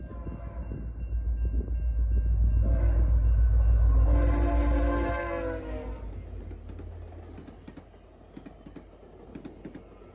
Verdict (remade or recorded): recorded